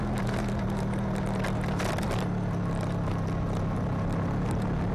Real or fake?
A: real